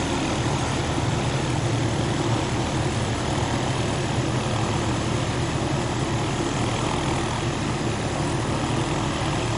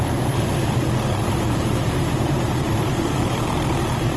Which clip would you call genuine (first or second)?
first